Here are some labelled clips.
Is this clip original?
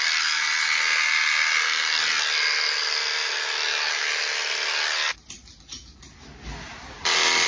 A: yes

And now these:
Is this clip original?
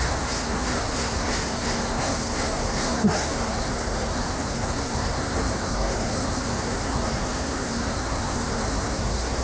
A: no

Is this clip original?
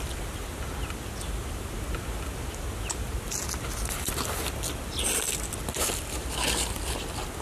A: yes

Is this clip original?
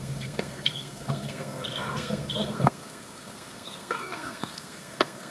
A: no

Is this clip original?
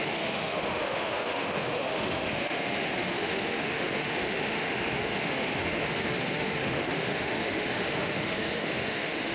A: no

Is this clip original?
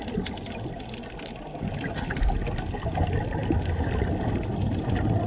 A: yes